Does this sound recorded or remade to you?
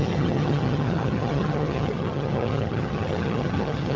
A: remade